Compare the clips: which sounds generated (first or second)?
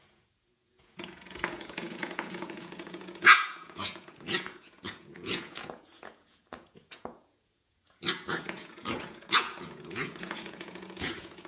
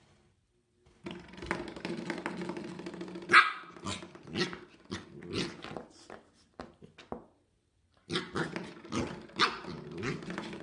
first